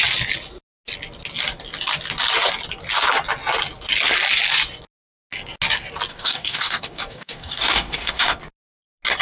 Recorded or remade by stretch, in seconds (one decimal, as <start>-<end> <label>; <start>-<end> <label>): 0.0-6.1 recorded; 6.1-8.4 remade; 8.4-9.2 recorded